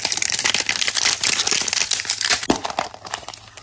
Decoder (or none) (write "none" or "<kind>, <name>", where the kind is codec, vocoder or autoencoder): none